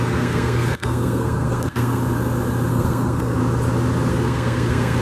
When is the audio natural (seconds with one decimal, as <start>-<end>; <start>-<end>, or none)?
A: 2.0-2.7; 3.4-4.1